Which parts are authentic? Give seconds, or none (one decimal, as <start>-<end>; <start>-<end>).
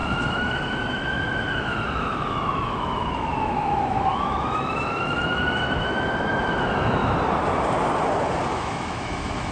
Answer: 7.0-8.5